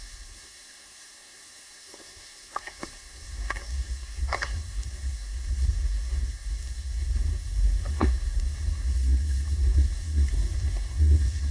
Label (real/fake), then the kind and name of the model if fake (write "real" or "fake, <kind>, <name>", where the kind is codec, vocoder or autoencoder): fake, codec, SNAC